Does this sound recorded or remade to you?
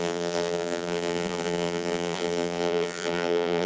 remade